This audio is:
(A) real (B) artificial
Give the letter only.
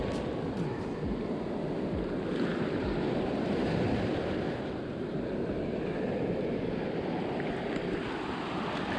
A